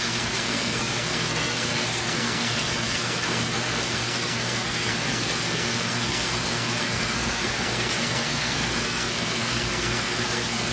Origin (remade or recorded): remade